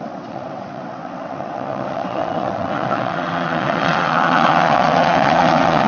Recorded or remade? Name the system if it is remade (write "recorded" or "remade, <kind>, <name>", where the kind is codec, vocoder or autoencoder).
remade, vocoder, WaveNeXt